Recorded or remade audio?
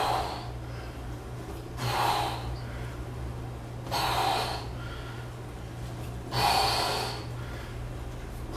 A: recorded